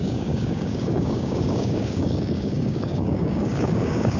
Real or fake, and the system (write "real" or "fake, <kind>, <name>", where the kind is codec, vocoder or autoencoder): fake, codec, DAC